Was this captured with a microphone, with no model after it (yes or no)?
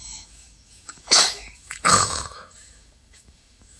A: no